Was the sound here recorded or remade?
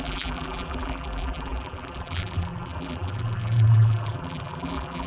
remade